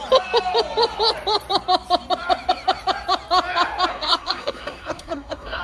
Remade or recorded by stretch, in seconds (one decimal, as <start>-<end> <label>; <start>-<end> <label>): 0.0-3.9 recorded; 3.9-5.6 remade